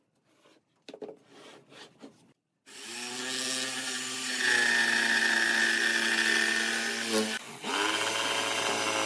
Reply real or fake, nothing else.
real